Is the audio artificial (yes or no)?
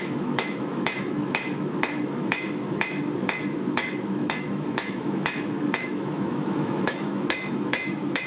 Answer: yes